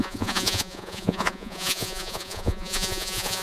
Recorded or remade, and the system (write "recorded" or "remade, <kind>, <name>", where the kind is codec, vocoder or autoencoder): remade, vocoder, Vocos